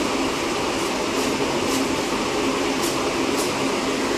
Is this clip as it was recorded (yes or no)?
yes